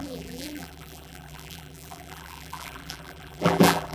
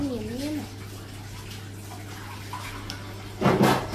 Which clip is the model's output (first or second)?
first